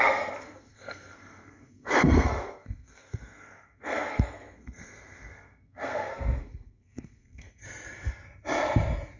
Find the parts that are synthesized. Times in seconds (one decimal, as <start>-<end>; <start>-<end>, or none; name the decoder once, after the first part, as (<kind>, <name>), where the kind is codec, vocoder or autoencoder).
0.0-7.6 (codec, SNAC)